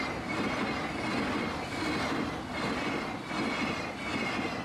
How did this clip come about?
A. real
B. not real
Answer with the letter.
A